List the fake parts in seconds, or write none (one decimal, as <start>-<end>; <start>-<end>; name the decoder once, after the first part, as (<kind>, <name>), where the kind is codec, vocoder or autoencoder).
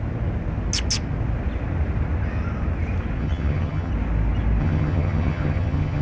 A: 3.2-3.9 (vocoder, HiFi-GAN); 4.6-6.0